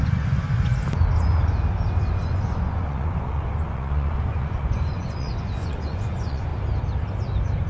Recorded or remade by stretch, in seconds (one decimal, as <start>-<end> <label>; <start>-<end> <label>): 0.0-0.7 remade; 0.7-2.1 recorded; 2.1-6.5 remade; 6.5-7.7 recorded